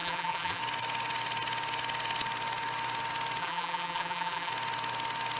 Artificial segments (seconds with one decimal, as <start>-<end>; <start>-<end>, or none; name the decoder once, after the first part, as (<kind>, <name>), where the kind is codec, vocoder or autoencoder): 0.0-0.6 (vocoder, BigVGAN v2); 3.4-4.5